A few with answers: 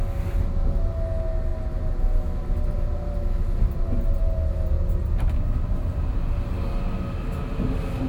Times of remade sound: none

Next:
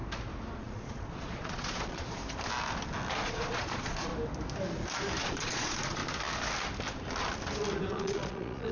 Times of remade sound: 0.6-2.2 (vocoder, Vocos); 3.2-4.1; 5.2-6.0; 7.9-8.7

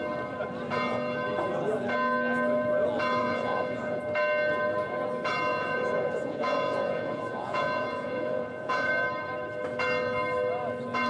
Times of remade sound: 3.2-4.0 (vocoder, Vocos); 5.5-8.9

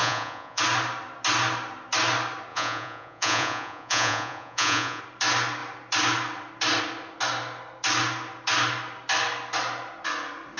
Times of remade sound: 0.0-0.6 (vocoder, Vocos); 2.5-5.0

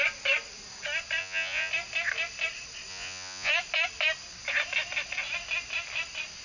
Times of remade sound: 1.2-1.7 (vocoder, Vocos); 2.9-3.5

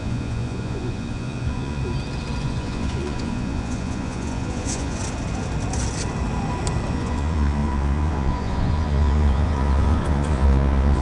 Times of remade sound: 0.0-1.8 (vocoder, Vocos); 2.4-5.0; 6.9-11.0